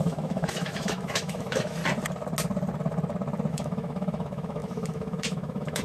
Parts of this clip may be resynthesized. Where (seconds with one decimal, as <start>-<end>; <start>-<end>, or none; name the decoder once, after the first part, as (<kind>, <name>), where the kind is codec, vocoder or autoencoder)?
0.0-1.8 (autoencoder, DAC-VAE); 3.5-5.8